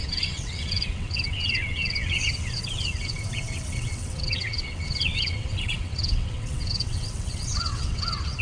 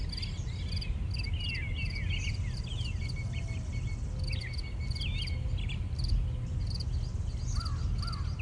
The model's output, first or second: first